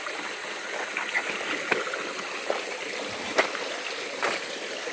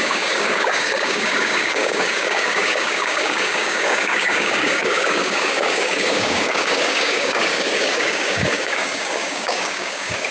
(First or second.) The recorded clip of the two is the first